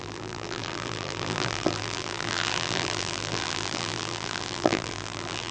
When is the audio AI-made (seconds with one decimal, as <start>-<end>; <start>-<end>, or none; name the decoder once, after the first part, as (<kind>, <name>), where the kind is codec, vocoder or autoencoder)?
0.0-5.5 (vocoder, BigVGAN v2)